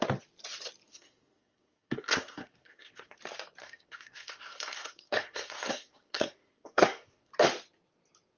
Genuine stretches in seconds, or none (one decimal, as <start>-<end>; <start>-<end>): 0.0-0.9; 3.2-3.6; 7.3-8.4